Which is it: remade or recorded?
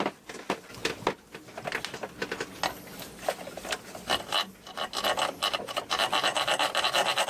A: recorded